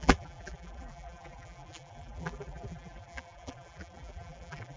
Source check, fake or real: fake